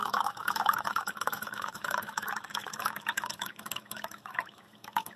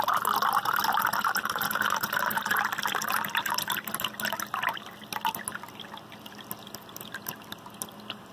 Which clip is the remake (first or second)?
first